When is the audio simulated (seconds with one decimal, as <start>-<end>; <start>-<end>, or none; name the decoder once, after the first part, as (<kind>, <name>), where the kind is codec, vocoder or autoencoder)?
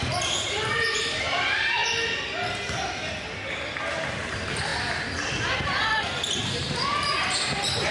0.0-1.8 (vocoder, BigVGAN v2); 3.5-4.7; 6.3-7.9